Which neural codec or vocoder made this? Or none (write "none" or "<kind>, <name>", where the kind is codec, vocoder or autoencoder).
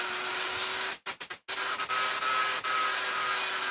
none